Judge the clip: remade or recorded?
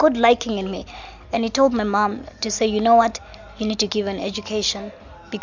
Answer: recorded